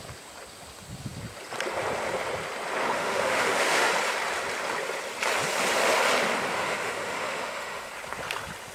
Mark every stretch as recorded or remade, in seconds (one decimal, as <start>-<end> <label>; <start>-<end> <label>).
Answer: 0.0-2.8 recorded; 2.8-3.9 remade; 3.9-6.5 recorded; 6.5-7.9 remade; 7.9-8.7 recorded